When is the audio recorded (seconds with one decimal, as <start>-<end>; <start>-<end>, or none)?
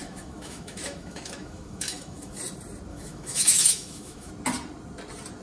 2.4-2.9; 4.3-5.4